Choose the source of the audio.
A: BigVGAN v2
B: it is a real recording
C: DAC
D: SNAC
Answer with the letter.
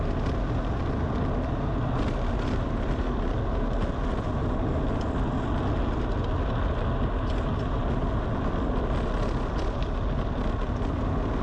B